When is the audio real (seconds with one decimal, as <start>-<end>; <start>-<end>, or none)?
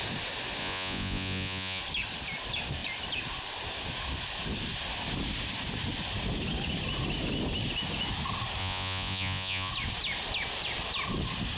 0.0-0.6; 1.8-8.6; 9.7-11.6